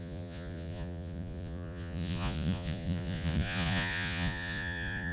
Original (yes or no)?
no